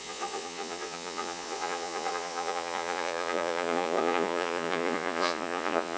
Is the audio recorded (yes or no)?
no